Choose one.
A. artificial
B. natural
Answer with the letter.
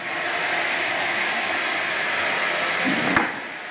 B